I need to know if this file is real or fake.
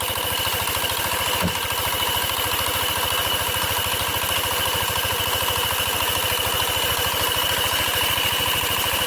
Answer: real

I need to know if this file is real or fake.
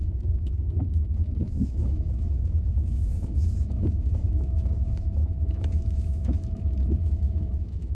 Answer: fake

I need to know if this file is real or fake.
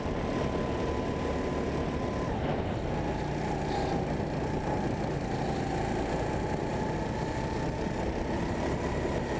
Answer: real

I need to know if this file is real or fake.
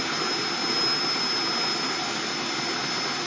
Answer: real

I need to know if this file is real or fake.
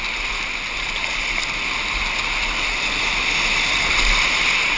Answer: real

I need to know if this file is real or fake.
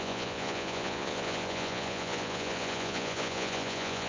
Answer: fake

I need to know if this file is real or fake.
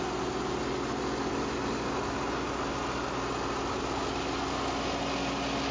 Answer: real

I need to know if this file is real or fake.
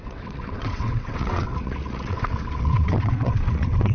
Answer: fake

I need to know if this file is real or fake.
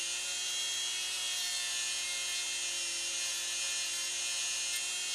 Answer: real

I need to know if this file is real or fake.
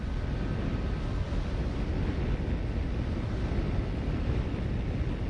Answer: real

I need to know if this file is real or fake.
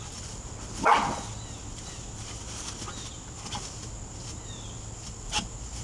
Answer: real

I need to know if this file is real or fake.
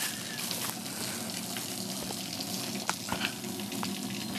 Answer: real